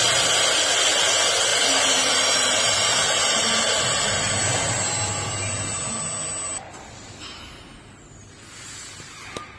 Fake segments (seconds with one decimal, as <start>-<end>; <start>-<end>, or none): none